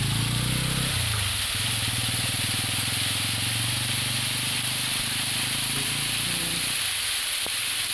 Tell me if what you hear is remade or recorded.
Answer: recorded